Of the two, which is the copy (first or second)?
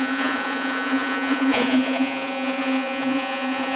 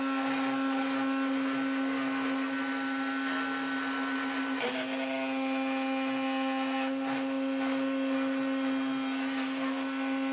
first